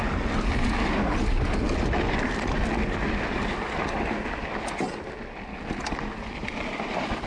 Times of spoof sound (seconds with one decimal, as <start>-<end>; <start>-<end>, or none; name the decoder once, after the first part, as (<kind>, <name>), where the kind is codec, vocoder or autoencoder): none